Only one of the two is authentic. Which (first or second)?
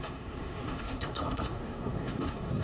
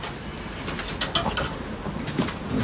second